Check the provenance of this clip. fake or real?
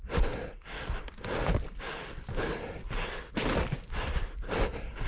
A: fake